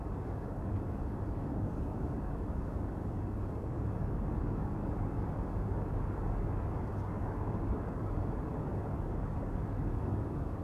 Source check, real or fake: fake